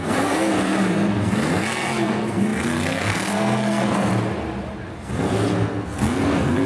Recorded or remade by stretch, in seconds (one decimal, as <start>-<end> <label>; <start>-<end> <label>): 0.0-4.1 remade; 4.1-4.9 recorded; 4.9-6.7 remade